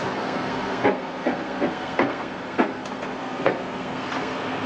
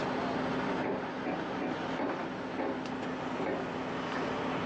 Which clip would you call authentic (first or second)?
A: second